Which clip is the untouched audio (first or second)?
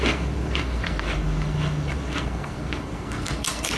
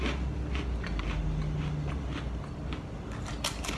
second